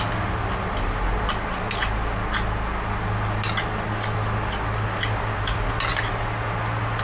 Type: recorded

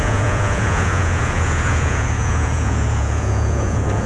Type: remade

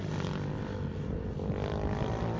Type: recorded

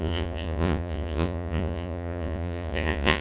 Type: remade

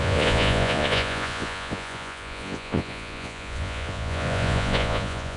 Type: remade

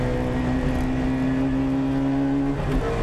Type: recorded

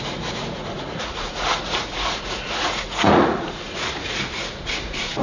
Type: remade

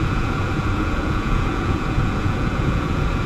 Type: remade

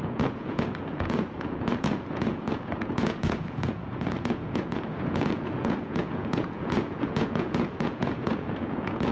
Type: remade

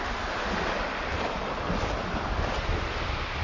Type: recorded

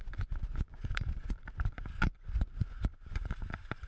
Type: remade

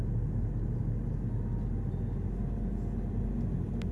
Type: recorded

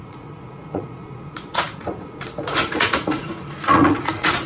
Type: remade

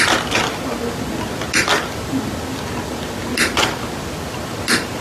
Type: recorded